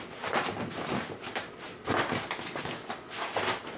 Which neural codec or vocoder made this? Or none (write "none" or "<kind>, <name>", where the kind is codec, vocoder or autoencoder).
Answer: none